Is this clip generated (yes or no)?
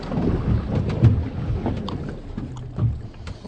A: no